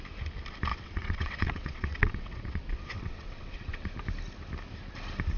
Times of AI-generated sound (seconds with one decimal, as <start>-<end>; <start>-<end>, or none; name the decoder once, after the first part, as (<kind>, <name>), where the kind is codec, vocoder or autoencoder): 0.7-3.9 (vocoder, WaveNeXt)